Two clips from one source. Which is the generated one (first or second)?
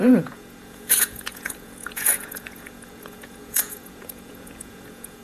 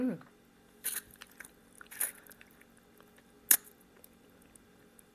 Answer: first